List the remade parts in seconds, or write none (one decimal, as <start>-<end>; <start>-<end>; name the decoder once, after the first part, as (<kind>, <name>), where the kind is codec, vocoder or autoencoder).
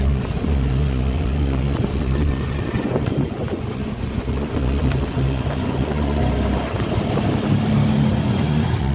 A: 0.0-6.2 (vocoder, Vocos); 7.9-8.9